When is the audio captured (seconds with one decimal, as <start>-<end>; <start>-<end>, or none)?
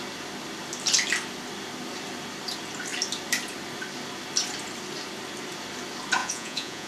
0.0-6.2